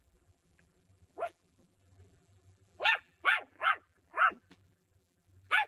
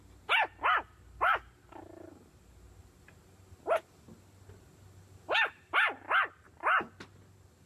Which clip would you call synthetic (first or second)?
first